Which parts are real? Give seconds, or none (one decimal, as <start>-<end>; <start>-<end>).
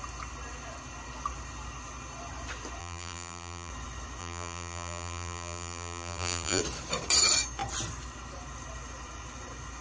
0.0-2.8; 3.7-4.2; 6.6-9.8